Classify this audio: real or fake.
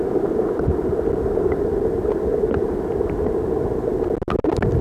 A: real